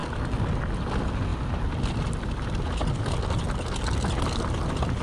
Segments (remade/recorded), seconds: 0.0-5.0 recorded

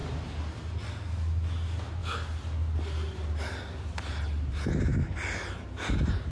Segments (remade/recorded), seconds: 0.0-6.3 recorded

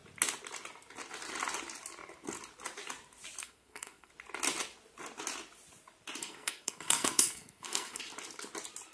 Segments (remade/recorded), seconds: 0.0-3.4 recorded; 3.4-4.1 remade; 4.1-6.2 recorded; 6.2-8.0 remade; 8.0-8.9 recorded

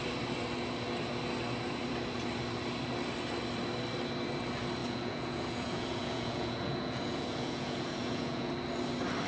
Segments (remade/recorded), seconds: 0.0-4.8 recorded; 4.8-8.5 remade; 8.5-9.3 recorded

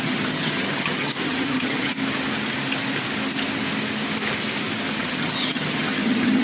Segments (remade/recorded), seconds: 0.0-1.9 remade; 1.9-5.0 recorded; 5.0-6.4 remade